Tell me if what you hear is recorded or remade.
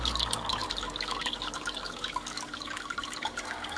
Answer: remade